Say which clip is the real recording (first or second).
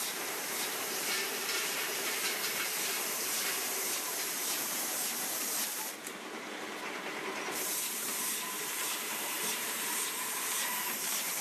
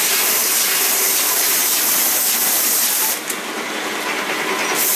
second